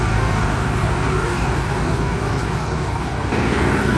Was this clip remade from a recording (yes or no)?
yes